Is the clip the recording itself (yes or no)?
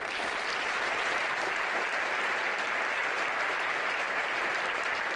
no